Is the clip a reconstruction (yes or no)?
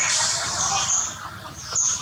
no